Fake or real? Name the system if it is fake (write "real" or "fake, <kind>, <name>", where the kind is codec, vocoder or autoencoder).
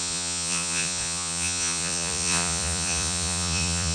fake, vocoder, Vocos